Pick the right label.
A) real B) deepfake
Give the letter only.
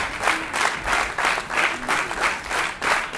A